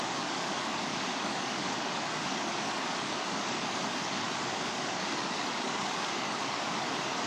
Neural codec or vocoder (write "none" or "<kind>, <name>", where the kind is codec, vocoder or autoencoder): codec, DAC